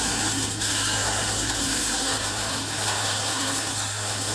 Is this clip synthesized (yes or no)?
yes